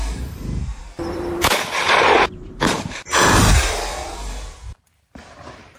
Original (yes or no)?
no